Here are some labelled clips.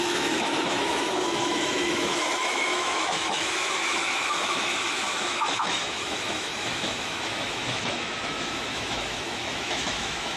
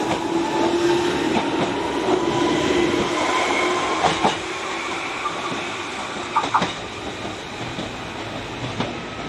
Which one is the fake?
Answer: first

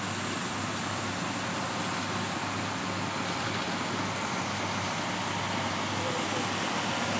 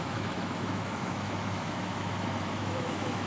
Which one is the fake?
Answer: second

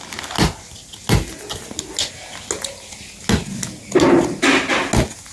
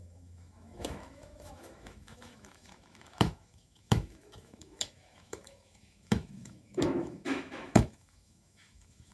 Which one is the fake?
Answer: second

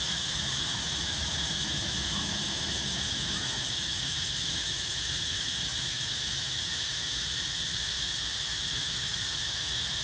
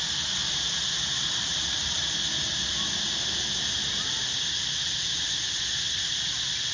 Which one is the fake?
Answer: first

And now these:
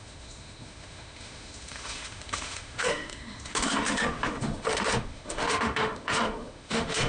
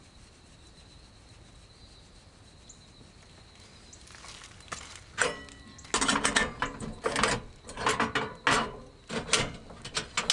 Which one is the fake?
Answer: first